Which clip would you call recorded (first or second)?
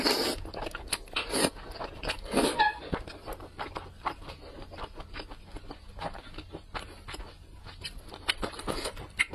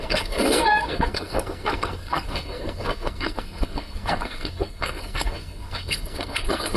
first